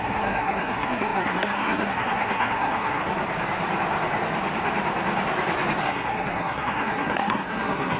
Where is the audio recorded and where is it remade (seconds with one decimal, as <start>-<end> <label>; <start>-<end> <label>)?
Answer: 0.0-3.0 remade; 3.0-5.8 recorded; 5.8-8.0 remade